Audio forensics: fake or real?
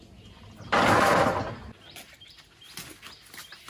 real